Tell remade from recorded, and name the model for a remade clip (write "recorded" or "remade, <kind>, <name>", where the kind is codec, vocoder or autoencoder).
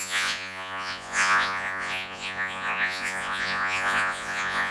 remade, vocoder, Vocos